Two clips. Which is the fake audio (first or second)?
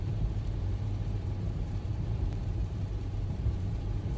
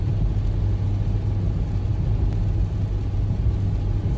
first